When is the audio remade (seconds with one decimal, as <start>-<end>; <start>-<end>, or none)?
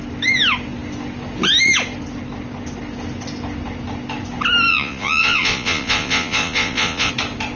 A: 4.7-7.1